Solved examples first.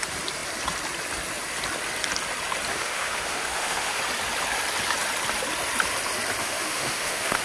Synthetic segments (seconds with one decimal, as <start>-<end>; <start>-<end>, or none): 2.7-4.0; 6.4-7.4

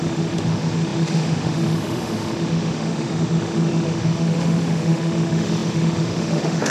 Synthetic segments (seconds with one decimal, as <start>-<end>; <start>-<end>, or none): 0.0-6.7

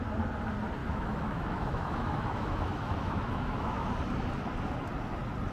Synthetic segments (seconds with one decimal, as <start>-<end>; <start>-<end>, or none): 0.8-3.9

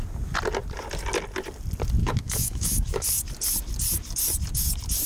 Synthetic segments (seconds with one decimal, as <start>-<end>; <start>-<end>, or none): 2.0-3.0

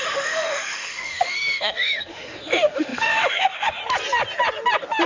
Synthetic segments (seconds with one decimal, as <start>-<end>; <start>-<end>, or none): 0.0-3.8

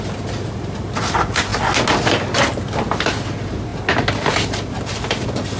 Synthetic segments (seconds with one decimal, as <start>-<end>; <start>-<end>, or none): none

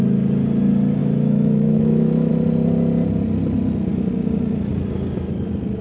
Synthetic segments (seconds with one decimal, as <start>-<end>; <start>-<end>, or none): 1.0-2.3